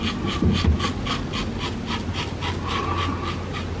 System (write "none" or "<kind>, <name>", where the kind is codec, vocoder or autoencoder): none